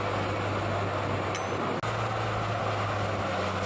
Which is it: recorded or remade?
recorded